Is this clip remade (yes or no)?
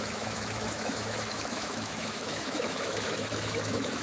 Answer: yes